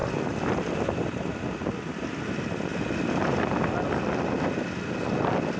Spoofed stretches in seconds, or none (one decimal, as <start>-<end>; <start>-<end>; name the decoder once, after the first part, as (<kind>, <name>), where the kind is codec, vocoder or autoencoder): 0.0-0.9 (vocoder, BigVGAN v2)